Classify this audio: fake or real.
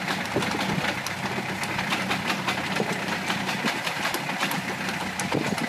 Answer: real